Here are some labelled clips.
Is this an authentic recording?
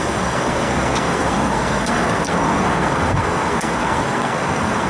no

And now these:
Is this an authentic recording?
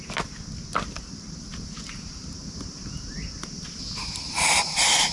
yes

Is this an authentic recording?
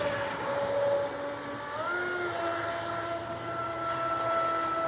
yes